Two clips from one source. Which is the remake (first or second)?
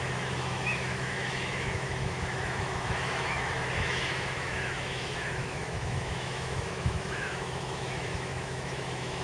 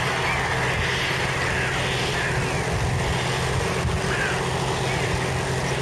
first